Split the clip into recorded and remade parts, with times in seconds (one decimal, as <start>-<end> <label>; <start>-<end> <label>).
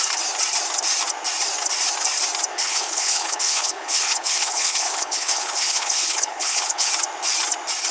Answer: 0.0-2.5 recorded; 2.5-6.9 remade; 6.9-7.9 recorded